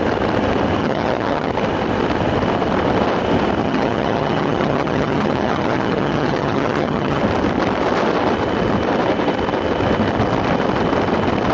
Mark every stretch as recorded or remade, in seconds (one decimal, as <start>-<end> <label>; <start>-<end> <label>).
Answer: 0.0-0.8 recorded; 0.8-1.5 remade; 1.5-3.6 recorded; 3.6-7.2 remade; 7.2-11.5 recorded